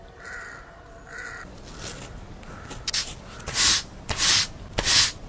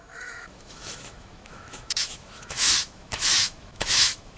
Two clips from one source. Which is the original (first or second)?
first